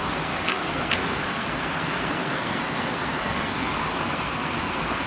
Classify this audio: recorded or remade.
remade